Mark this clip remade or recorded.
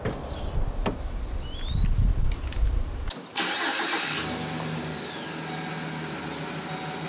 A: recorded